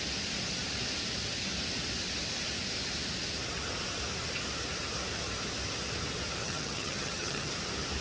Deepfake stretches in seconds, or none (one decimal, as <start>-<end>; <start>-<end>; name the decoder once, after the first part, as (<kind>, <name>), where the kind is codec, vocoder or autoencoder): 6.4-7.5 (vocoder, HiFi-GAN)